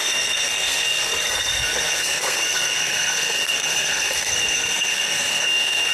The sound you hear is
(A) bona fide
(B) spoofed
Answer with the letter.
B